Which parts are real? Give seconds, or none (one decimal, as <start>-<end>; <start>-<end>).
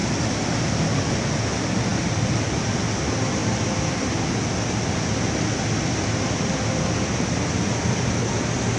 0.0-1.9; 2.6-8.8